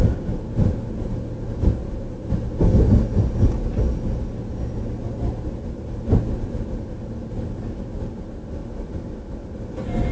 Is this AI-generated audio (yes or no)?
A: no